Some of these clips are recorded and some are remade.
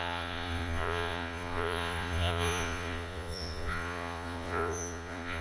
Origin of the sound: remade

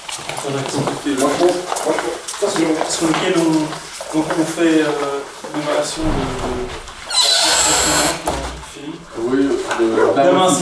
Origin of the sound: recorded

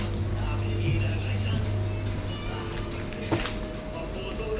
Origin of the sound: recorded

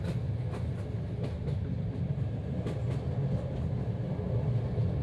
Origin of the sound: recorded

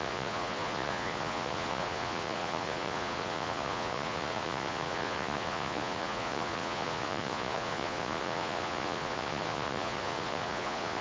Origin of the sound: remade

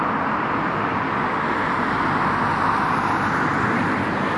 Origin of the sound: recorded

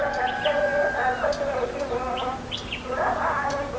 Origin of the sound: recorded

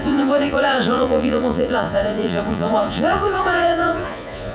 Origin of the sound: remade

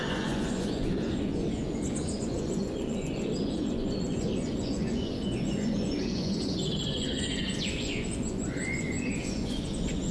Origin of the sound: remade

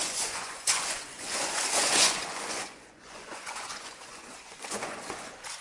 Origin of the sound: remade